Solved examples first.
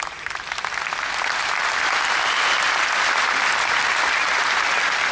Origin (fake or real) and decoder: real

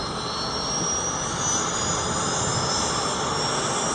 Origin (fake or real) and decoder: real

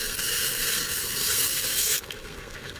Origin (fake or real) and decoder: fake, codec, SNAC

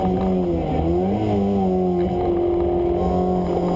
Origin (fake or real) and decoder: real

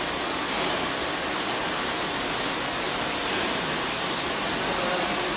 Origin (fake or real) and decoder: real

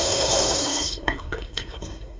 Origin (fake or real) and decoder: fake, codec, SNAC